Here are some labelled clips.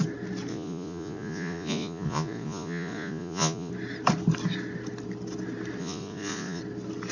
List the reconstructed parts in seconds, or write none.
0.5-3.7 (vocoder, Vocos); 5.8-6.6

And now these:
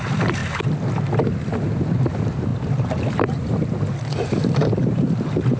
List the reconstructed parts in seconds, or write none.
0.0-0.4 (vocoder, BigVGAN v2); 2.1-2.5; 4.0-5.6

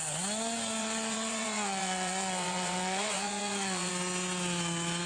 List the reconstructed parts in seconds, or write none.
0.8-3.9 (vocoder, WaveNeXt)

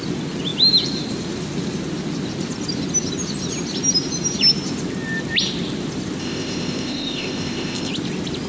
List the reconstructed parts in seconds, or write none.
6.2-7.9 (codec, ZipCodec)

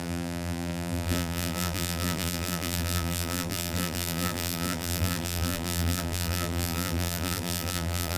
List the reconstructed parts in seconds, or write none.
0.0-8.2 (vocoder, BigVGAN v2)

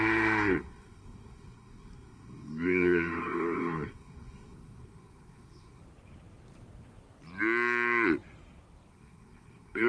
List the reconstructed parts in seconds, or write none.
0.0-5.8 (codec, SNAC); 8.9-9.9